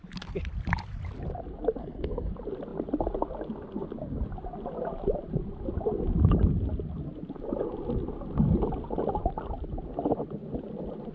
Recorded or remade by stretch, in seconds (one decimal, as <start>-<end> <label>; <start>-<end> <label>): 0.0-1.8 recorded; 1.8-2.3 remade; 2.3-11.1 recorded